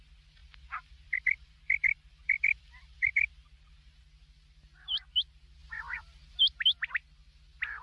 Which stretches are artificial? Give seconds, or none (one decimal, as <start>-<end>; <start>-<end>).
0.4-3.7; 5.6-6.4